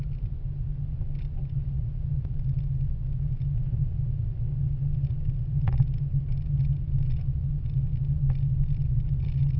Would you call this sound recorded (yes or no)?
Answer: yes